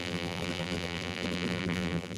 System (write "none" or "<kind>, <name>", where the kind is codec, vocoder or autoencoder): vocoder, BigVGAN v2